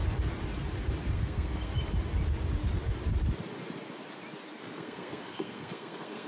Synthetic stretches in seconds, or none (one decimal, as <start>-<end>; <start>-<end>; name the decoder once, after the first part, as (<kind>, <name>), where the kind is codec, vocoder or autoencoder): 1.1-1.7 (codec, SNAC); 4.6-6.3